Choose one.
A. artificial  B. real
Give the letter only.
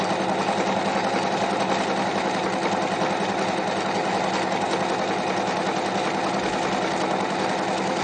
B